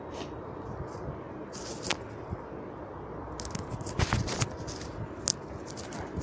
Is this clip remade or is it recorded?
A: recorded